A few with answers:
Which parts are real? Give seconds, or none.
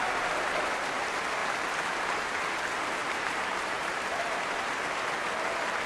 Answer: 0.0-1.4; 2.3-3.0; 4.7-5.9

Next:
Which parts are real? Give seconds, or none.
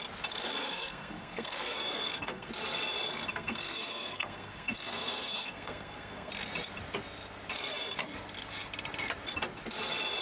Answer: 0.0-0.6; 2.5-3.3; 6.3-10.2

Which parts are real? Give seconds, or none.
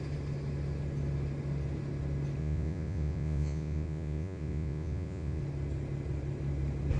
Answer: 0.0-2.4; 5.4-7.0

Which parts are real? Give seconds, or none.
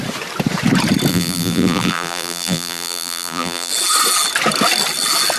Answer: 0.0-1.1; 3.7-5.4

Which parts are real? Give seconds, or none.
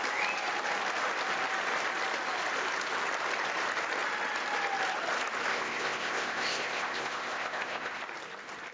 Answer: 0.0-5.5; 8.0-8.7